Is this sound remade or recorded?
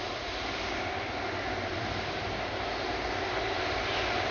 recorded